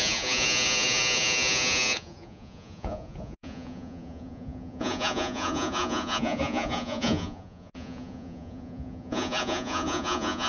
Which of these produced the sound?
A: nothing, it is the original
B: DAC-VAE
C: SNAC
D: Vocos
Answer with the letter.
D